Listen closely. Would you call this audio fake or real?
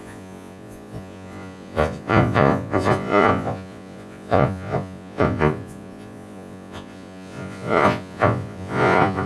fake